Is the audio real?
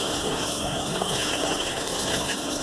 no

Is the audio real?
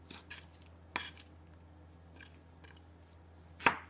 yes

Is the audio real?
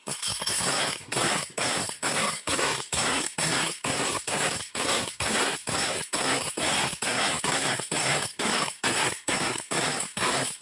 no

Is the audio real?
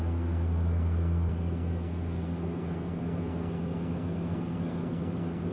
no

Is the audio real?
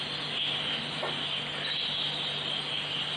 yes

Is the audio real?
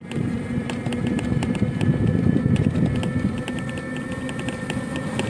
yes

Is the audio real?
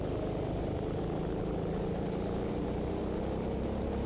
yes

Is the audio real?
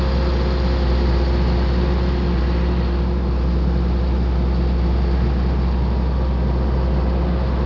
yes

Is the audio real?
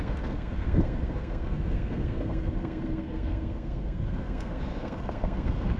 no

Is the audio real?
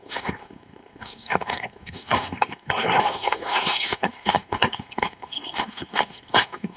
no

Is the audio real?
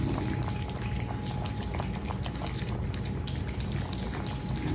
yes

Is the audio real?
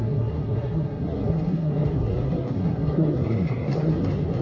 no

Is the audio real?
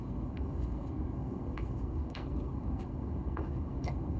no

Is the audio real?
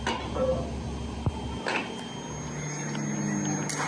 yes